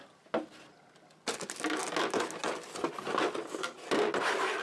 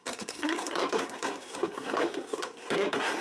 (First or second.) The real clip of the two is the first